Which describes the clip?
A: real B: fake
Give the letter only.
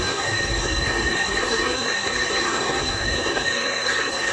B